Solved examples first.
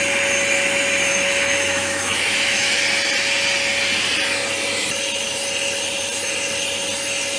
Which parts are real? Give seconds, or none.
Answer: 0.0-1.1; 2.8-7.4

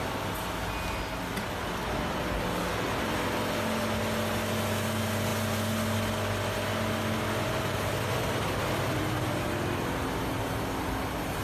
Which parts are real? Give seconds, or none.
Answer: 0.0-11.4